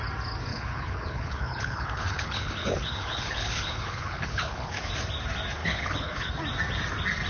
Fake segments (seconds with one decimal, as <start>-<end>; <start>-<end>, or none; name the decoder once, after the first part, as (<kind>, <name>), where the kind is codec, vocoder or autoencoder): 0.5-4.9 (codec, HILCodec); 5.6-6.3